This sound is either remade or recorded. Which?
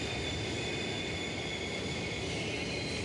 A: recorded